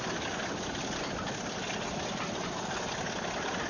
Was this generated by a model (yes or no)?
no